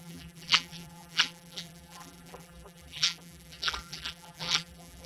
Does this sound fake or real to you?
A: fake